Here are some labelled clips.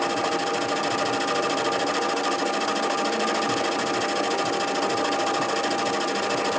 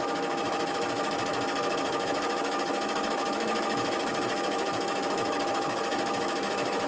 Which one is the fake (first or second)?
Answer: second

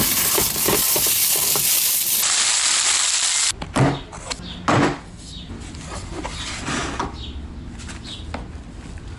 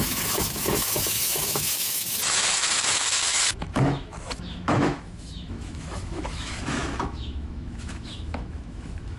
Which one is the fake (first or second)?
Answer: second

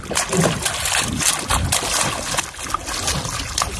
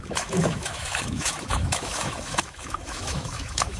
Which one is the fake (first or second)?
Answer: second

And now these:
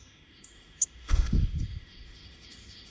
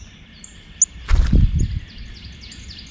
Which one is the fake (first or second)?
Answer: first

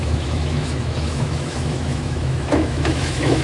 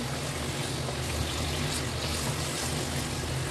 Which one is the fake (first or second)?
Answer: first